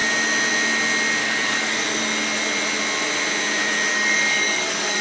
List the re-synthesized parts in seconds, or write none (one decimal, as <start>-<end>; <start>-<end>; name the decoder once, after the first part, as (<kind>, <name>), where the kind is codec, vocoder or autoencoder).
1.2-2.0 (codec, DAC); 3.9-5.0